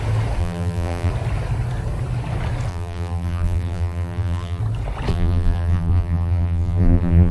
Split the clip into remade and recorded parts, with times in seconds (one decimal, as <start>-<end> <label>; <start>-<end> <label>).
0.0-0.4 recorded; 0.4-1.1 remade; 1.1-2.7 recorded; 2.7-4.6 remade; 4.6-5.1 recorded; 5.1-7.3 remade